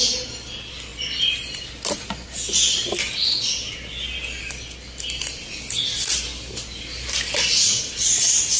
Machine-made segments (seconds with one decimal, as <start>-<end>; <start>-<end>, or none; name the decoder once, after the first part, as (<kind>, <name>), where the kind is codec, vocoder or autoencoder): none